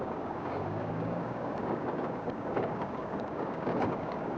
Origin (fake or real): fake